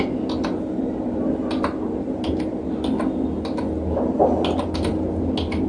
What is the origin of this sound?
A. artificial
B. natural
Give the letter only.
B